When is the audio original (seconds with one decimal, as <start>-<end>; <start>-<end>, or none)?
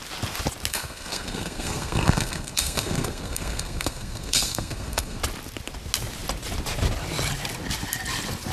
0.0-0.7; 5.2-8.5